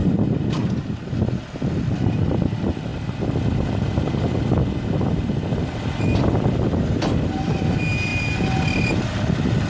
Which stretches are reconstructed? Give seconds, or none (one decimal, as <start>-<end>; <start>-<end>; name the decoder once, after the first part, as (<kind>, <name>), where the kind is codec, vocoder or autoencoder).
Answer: none